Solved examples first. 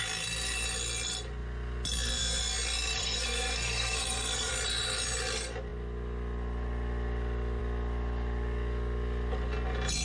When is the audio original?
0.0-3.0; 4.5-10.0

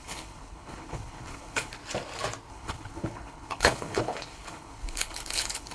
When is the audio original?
1.8-2.5

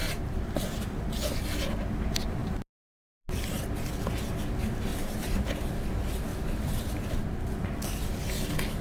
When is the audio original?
0.6-2.4; 3.6-4.9; 5.5-6.3; 8.2-8.8

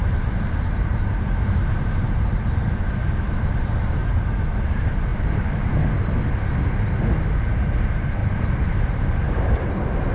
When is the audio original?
3.0-4.0; 4.6-5.1; 5.7-8.2; 9.7-10.1

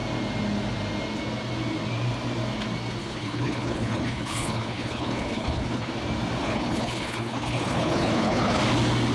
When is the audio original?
0.0-3.0; 5.9-6.4; 8.6-9.1

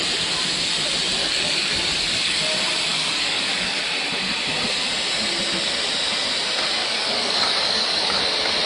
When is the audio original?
0.0-1.2; 2.4-2.9; 3.8-6.8; 8.2-8.7

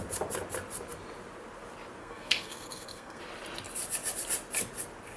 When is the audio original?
0.0-2.0; 3.2-5.2

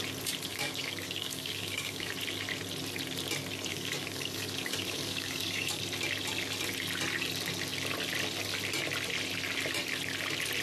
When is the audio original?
0.0-0.5; 2.1-3.7; 5.8-10.6